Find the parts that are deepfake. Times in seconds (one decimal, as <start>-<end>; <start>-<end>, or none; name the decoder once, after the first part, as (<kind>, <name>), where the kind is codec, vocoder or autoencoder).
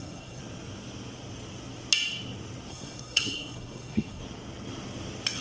0.0-0.4 (codec, SNAC); 2.7-4.2